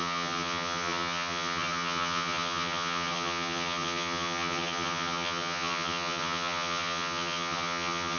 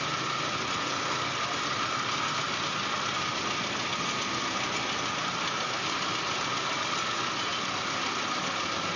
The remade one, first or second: first